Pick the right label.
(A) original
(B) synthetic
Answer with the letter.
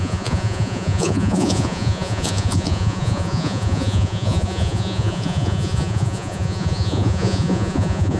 B